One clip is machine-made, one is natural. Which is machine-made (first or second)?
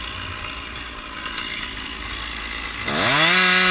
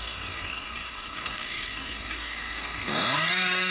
second